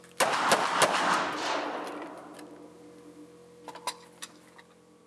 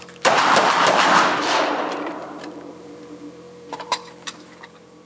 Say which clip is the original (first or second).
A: first